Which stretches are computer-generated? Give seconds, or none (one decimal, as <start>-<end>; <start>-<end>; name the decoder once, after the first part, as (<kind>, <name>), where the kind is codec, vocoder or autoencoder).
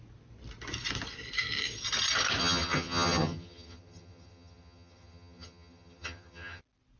2.4-6.6 (vocoder, HiFi-GAN)